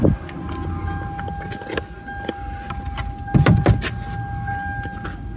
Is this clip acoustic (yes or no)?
yes